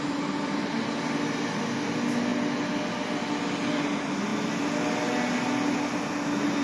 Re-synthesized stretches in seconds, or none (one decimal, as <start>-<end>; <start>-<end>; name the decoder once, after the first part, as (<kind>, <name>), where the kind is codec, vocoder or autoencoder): none